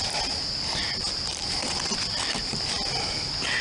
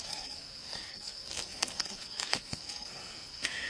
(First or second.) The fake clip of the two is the second